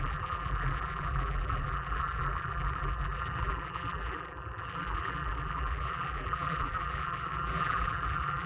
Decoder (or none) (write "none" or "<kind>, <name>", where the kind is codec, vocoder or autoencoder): vocoder, BigVGAN v2